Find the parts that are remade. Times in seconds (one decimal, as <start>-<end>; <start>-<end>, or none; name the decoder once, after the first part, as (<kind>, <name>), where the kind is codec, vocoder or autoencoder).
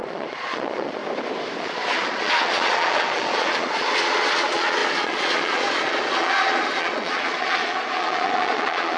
0.0-1.0 (vocoder, Vocos); 1.6-9.0